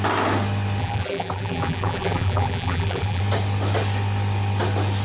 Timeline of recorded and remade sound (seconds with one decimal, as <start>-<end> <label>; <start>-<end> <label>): 0.0-0.8 recorded; 0.8-3.2 remade; 3.2-5.0 recorded